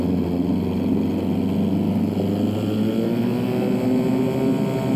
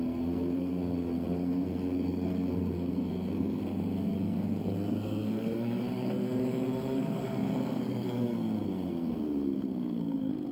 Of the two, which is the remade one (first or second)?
second